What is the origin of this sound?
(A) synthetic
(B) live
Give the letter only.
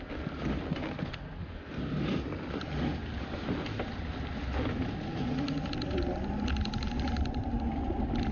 B